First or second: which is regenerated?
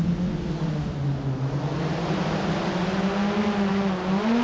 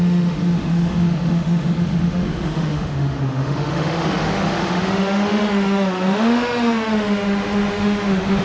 second